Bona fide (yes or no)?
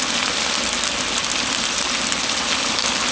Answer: yes